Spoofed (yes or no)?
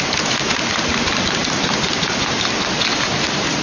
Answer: no